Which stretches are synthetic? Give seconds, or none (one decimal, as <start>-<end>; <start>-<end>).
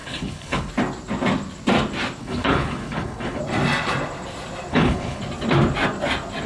0.0-0.7; 2.2-3.4; 4.7-5.2